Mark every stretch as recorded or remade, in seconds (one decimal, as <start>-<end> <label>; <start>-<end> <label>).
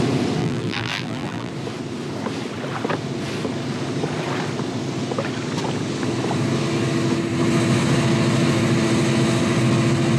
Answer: 0.0-0.4 recorded; 0.4-1.5 remade; 1.5-10.2 recorded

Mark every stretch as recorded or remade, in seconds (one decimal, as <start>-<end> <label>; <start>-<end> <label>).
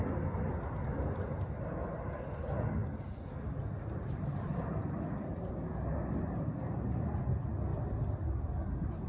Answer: 0.0-2.8 recorded; 2.8-5.5 remade; 5.5-9.1 recorded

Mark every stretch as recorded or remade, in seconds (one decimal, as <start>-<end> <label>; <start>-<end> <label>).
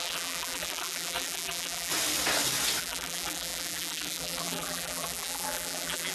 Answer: 0.0-1.9 remade; 1.9-2.8 recorded; 2.8-6.1 remade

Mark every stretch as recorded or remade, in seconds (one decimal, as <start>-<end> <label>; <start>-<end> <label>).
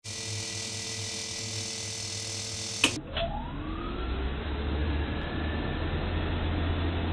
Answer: 0.0-4.8 recorded; 4.8-5.6 remade; 5.6-7.1 recorded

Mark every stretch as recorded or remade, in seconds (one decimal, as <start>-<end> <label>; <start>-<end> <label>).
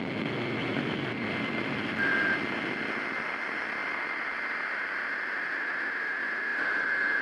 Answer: 0.0-0.7 recorded; 0.7-1.5 remade; 1.5-6.5 recorded; 6.5-7.2 remade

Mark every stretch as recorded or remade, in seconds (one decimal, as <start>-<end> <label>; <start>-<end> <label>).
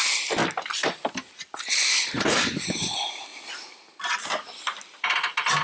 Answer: 0.0-0.4 remade; 0.4-2.1 recorded; 2.1-3.3 remade; 3.3-4.9 recorded; 4.9-5.6 remade